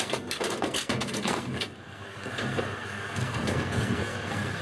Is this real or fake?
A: fake